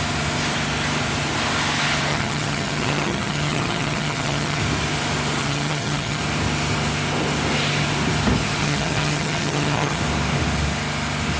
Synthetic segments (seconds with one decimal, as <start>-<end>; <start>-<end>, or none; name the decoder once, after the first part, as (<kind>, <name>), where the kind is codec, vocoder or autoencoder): 2.1-4.6 (vocoder, HiFi-GAN); 5.4-6.2; 8.6-10.0